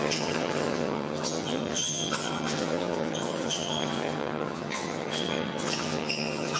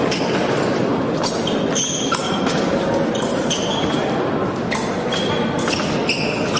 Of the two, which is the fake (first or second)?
first